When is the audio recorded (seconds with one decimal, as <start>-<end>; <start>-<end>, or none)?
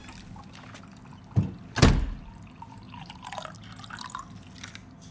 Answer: 0.0-5.1